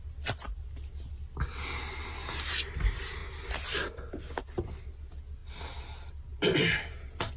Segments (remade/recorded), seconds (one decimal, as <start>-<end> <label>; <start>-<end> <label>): 0.0-7.4 recorded